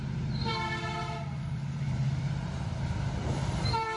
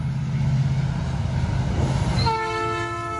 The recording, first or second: second